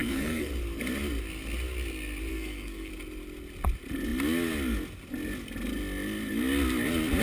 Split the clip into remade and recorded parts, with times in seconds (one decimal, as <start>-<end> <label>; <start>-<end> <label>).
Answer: 0.0-0.5 remade; 0.5-2.3 recorded; 2.3-2.9 remade; 2.9-7.2 recorded